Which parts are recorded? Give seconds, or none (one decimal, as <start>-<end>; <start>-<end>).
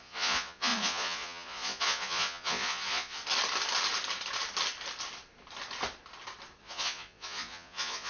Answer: 3.2-6.6